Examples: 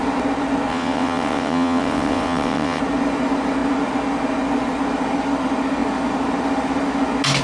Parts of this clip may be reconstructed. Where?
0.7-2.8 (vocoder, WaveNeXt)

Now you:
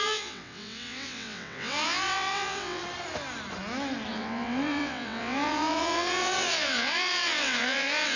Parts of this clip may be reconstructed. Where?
0.0-2.8 (vocoder, WaveNeXt); 4.1-8.2